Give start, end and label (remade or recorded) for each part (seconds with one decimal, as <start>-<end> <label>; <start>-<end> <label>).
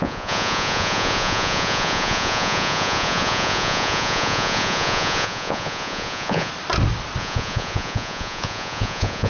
0.0-6.5 remade; 6.5-7.2 recorded; 7.2-9.3 remade